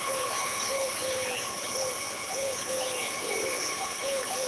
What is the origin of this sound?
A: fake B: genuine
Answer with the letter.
A